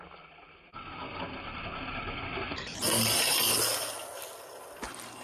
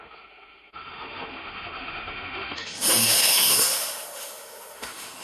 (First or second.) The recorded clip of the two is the first